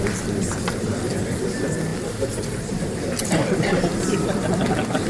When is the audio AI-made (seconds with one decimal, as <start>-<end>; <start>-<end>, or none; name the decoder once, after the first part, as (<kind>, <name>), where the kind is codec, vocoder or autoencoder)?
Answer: 0.0-5.1 (vocoder, BigVGAN v2)